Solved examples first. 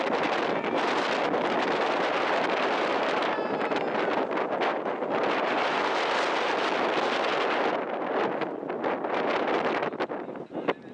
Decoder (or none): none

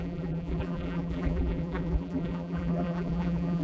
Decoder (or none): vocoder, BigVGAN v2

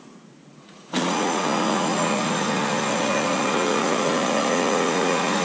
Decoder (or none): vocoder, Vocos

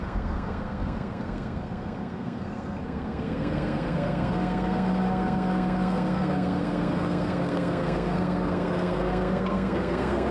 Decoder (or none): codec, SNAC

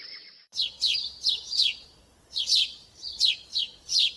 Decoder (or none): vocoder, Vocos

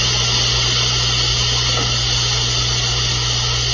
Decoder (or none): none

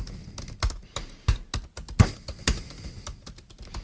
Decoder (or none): none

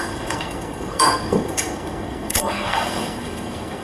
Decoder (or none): codec, SNAC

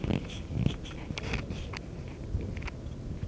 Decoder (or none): none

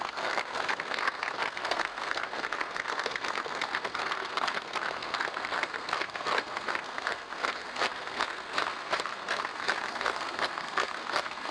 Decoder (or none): codec, SNAC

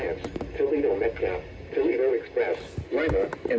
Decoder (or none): none